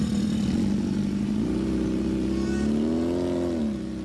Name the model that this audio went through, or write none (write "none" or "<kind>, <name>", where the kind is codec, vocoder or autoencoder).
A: none